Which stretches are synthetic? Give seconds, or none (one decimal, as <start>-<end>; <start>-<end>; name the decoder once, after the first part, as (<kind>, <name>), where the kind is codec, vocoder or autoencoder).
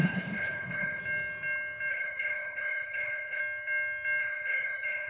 0.0-1.0 (codec, HILCodec); 1.9-3.4; 4.2-5.1